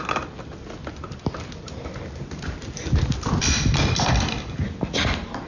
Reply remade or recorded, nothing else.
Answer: recorded